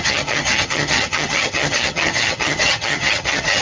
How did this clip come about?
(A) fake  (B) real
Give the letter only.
A